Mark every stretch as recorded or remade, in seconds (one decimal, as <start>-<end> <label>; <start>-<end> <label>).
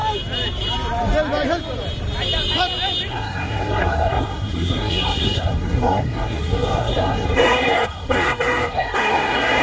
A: 0.0-3.1 recorded; 3.1-9.6 remade